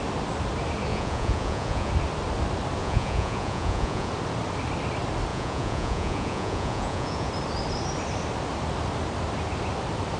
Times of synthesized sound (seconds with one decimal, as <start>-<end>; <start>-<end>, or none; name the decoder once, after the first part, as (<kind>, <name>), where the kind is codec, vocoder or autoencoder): 0.9-1.9 (vocoder, Vocos); 2.8-4.1; 5.3-7.3